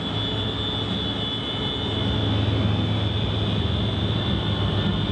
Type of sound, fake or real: real